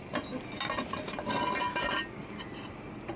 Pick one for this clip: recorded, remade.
recorded